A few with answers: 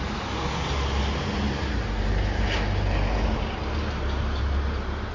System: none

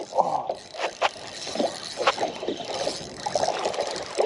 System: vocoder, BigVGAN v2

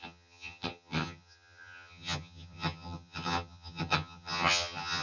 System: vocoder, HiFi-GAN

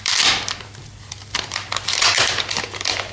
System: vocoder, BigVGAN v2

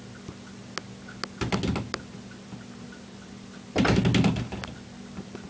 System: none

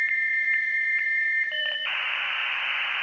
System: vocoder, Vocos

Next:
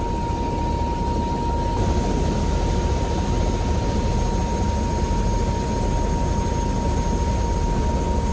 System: none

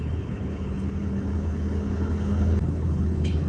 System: codec, HILCodec